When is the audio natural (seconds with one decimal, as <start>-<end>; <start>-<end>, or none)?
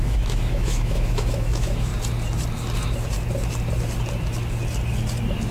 1.9-5.5